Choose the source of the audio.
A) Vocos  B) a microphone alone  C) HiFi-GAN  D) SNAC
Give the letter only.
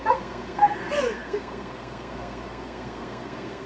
D